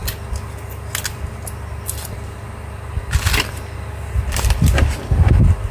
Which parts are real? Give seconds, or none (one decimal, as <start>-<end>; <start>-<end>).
0.0-5.7